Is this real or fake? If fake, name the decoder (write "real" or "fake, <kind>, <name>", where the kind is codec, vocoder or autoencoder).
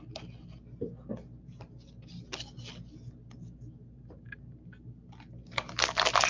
real